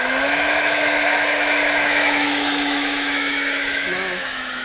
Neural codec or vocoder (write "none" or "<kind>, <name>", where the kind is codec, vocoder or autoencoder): autoencoder, DAC-VAE